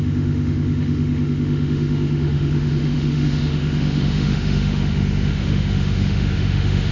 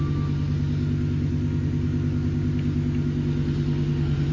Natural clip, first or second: second